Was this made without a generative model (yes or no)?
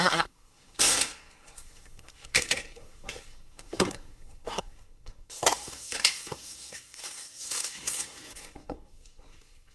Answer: no